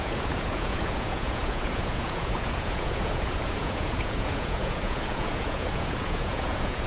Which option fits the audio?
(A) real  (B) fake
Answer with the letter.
B